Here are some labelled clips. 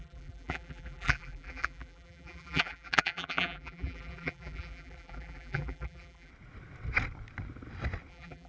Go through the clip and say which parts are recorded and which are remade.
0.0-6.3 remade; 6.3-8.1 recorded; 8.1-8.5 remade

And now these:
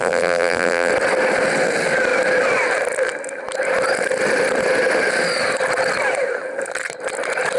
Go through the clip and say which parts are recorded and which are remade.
0.0-0.9 remade; 0.9-7.6 recorded

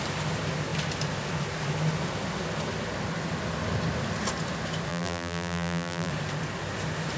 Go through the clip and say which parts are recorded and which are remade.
0.0-4.9 recorded; 4.9-6.1 remade; 6.1-7.2 recorded

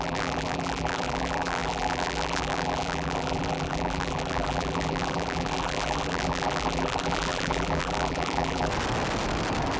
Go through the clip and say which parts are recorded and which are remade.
0.0-8.7 remade; 8.7-9.8 recorded

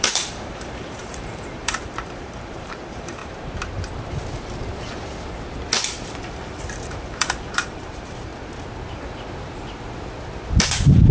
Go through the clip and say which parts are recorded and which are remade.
0.0-3.2 remade; 3.2-6.3 recorded; 6.3-8.3 remade; 8.3-11.1 recorded

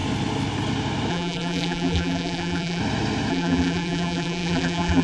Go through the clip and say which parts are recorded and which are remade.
0.0-1.1 recorded; 1.1-2.8 remade; 2.8-3.3 recorded; 3.3-5.0 remade

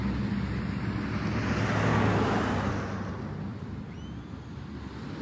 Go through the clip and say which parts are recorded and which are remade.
0.0-3.5 recorded; 3.5-4.8 remade; 4.8-5.2 recorded

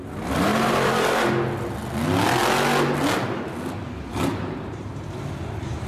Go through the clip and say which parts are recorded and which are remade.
0.0-0.5 recorded; 0.5-1.2 remade; 1.2-4.1 recorded; 4.1-5.1 remade; 5.1-5.9 recorded